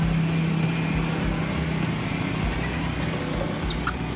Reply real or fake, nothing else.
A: real